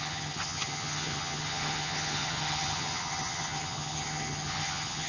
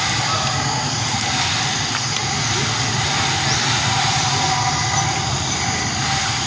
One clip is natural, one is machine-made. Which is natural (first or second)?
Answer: second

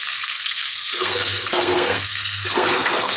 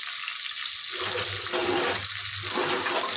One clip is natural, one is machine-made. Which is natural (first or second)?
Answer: second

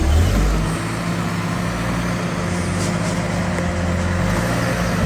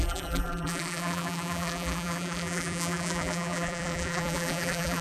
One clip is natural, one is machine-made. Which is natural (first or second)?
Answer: first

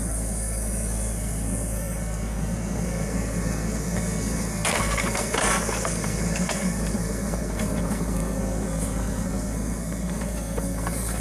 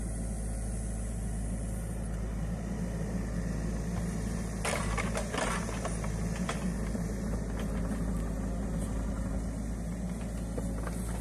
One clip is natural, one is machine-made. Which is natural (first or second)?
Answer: second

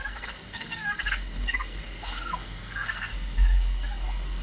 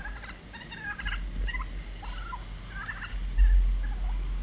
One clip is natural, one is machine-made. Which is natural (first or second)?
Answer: second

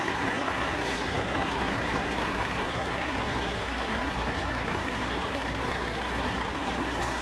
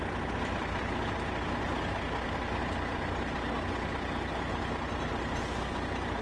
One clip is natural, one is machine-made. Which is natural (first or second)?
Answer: second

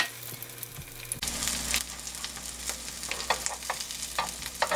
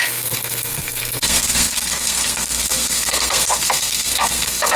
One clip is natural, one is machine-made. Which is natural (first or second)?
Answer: first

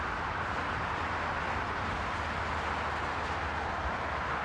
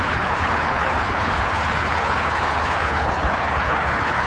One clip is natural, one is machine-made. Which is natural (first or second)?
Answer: first